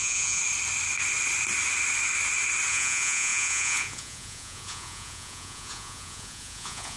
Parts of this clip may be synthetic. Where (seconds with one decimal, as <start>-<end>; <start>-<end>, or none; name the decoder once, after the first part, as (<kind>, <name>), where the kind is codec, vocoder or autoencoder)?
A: 0.0-0.4 (vocoder, Vocos); 2.7-7.0